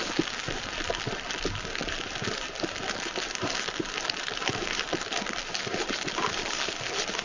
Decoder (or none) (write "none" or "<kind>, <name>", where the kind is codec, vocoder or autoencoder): none